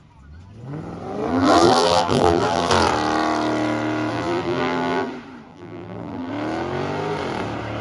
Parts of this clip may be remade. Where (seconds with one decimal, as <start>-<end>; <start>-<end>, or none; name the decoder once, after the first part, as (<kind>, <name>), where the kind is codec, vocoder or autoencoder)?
1.3-2.7 (vocoder, BigVGAN v2); 4.1-5.1; 5.5-6.3